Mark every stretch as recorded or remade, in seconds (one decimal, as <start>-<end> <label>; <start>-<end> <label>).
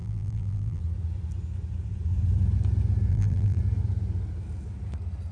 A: 0.0-0.8 remade; 0.8-3.1 recorded; 3.1-3.6 remade; 3.6-5.3 recorded